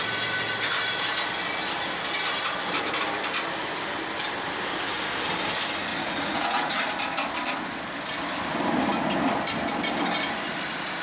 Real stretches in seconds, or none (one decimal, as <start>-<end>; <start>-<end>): 0.0-5.9; 6.7-11.0